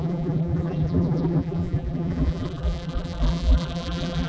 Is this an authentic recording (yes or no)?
no